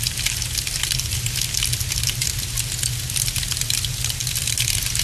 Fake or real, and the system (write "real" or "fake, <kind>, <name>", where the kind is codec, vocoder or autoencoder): real